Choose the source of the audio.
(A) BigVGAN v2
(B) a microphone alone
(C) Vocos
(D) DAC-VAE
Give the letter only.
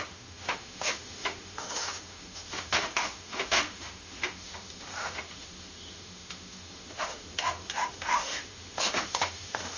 D